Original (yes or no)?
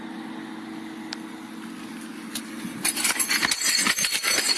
yes